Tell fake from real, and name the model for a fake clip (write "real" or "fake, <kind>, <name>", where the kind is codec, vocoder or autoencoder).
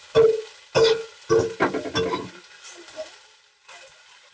real